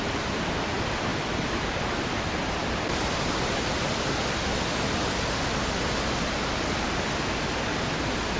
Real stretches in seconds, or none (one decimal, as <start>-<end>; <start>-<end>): 0.0-1.1; 5.1-8.4